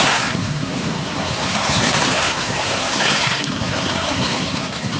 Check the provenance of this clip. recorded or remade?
remade